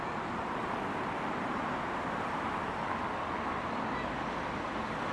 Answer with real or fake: real